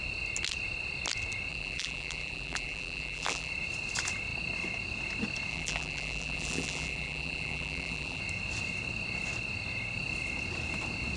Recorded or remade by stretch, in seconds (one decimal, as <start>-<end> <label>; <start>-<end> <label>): 0.0-1.5 recorded; 1.5-3.5 remade; 3.5-5.5 recorded; 5.5-8.2 remade; 8.2-11.2 recorded